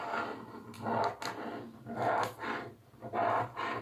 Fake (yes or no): no